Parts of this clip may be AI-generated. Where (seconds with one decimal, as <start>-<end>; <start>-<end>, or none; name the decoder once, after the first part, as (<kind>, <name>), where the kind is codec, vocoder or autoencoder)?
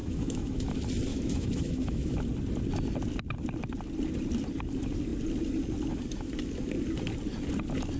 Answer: 0.0-0.6 (autoencoder, DAC-VAE); 1.1-2.2